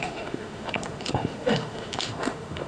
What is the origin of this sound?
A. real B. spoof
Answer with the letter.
B